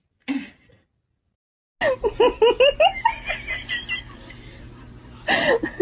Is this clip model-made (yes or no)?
no